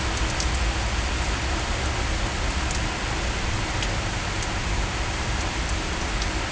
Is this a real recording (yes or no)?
yes